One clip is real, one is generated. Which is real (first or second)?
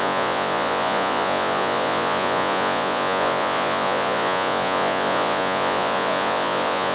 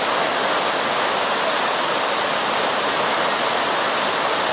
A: second